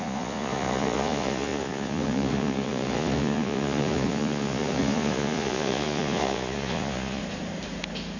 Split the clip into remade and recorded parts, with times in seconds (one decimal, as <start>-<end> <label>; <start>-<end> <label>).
0.0-7.2 remade; 7.2-8.2 recorded